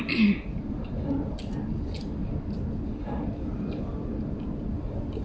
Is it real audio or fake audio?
real